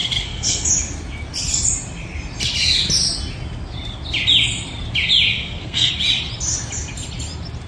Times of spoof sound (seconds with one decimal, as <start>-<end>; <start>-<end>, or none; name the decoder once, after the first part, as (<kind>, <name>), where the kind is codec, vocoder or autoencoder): 0.0-0.7 (codec, SNAC); 5.3-5.9